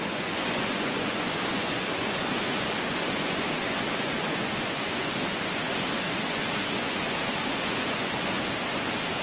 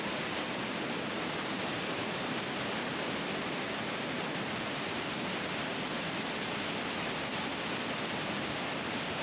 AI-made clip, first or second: first